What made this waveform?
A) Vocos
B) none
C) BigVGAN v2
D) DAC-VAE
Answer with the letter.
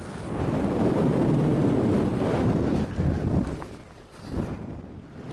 B